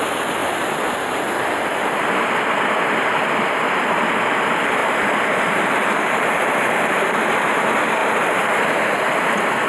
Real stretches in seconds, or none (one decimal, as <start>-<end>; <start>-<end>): 0.0-4.8; 7.3-8.0; 9.0-9.7